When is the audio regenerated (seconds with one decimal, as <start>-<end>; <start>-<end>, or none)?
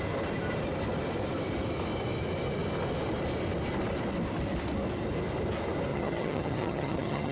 5.9-7.3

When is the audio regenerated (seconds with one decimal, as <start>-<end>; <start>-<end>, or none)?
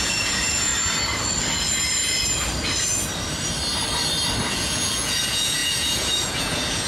0.0-0.7; 4.5-6.9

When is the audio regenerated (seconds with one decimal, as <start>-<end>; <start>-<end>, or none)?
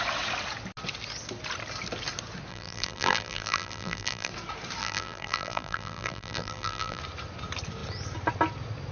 2.5-4.3; 4.8-7.0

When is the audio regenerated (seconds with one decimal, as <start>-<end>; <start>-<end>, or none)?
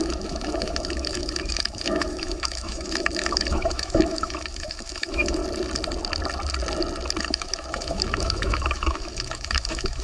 0.0-5.4; 7.2-10.0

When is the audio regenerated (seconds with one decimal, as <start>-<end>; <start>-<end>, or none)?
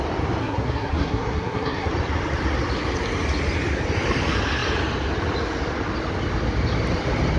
0.4-1.9